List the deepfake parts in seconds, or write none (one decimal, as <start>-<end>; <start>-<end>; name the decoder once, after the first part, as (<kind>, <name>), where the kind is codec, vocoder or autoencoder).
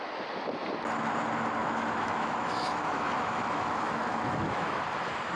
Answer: 1.6-4.8 (autoencoder, DAC-VAE)